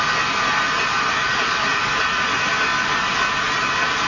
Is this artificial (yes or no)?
no